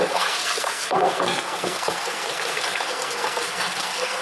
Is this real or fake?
fake